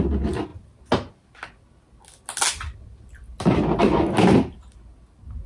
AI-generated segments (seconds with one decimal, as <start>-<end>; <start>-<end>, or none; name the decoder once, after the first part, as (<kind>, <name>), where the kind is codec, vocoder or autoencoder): none